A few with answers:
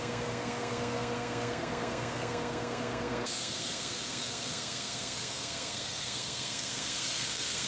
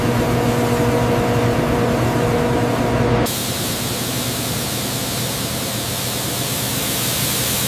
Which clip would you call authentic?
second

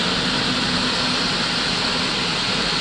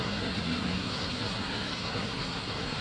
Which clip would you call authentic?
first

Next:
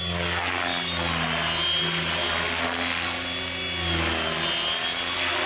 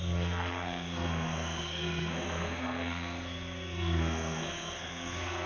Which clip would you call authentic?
first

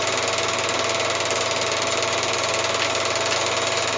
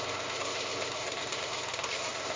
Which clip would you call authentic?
first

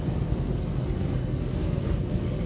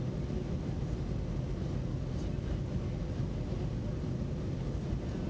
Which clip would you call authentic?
second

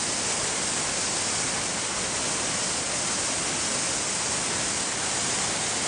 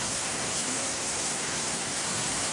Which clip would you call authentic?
first